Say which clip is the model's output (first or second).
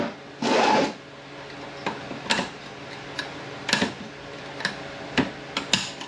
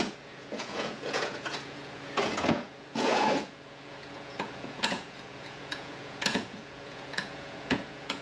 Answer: second